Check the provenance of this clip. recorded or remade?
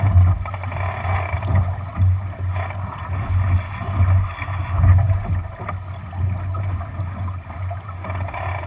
recorded